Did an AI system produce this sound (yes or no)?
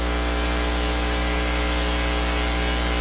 no